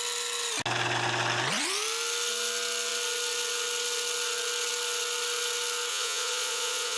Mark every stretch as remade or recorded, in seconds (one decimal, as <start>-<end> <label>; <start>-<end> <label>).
0.0-5.9 recorded; 5.9-7.0 remade